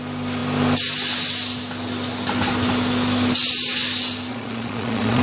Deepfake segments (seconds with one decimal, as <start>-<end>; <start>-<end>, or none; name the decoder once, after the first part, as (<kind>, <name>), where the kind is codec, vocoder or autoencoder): 4.3-5.2 (vocoder, Vocos)